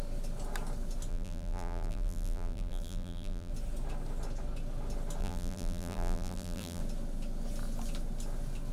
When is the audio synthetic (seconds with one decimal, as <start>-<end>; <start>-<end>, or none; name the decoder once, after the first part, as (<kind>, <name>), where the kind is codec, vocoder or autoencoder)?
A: 1.1-3.5 (vocoder, BigVGAN v2); 5.2-6.8